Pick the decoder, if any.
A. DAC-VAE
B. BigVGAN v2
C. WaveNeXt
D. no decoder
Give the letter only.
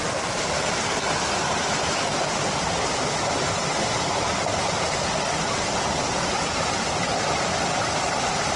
D